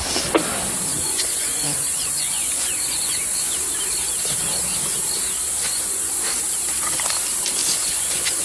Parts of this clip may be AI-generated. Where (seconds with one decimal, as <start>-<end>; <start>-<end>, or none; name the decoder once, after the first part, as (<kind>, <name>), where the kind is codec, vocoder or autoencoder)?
0.9-3.6 (vocoder, Vocos); 5.6-6.1; 7.6-8.4